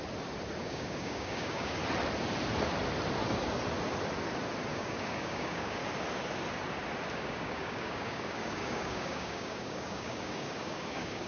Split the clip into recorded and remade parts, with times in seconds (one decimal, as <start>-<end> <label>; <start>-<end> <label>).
0.0-0.6 recorded; 0.6-1.8 remade; 1.8-4.7 recorded; 4.7-5.8 remade; 5.8-7.1 recorded; 7.1-11.3 remade